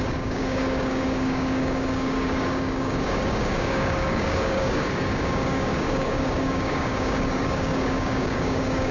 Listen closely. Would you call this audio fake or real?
fake